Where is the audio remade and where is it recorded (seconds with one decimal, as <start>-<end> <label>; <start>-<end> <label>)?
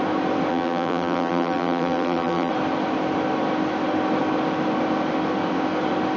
0.0-0.5 recorded; 0.5-2.5 remade; 2.5-6.2 recorded